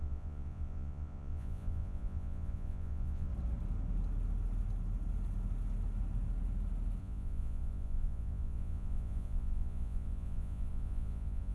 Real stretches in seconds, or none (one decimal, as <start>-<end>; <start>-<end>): 3.3-7.0